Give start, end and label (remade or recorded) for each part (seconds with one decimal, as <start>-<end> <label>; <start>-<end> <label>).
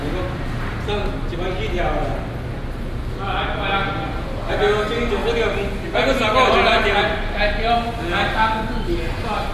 0.0-9.5 recorded